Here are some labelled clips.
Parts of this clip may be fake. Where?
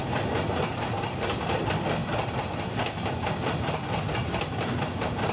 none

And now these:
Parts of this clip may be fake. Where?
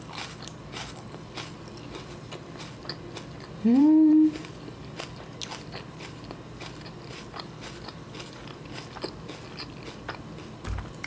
none